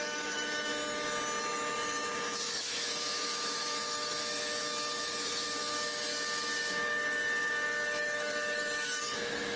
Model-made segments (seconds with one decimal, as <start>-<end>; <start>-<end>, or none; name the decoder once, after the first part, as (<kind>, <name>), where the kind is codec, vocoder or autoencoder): 0.0-0.7 (autoencoder, DAC-VAE); 1.4-6.1; 8.0-9.6